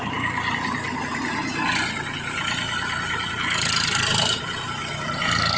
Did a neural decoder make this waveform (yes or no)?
no